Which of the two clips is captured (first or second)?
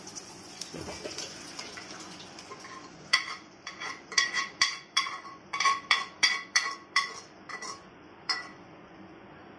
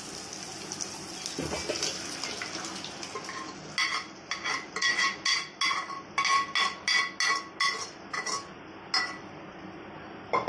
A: second